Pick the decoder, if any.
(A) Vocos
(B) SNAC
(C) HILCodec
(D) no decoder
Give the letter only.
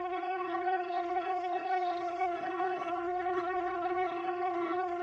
B